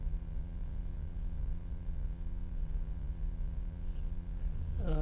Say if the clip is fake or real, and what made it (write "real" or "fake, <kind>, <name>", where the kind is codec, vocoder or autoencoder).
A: fake, vocoder, Vocos